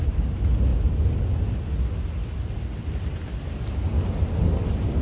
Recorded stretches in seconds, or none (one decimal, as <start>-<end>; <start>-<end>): 0.0-5.0